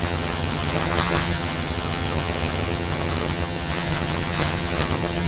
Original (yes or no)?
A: no